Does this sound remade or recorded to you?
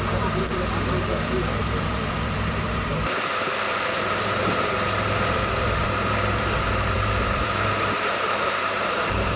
remade